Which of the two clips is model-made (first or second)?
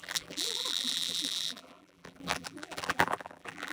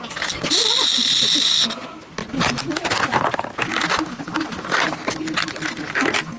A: first